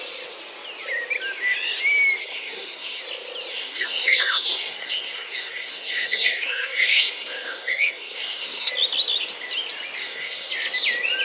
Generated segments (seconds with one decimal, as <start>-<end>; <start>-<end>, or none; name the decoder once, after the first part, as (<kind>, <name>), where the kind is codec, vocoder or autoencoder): 2.2-3.0 (codec, SNAC); 3.5-8.7; 10.0-10.5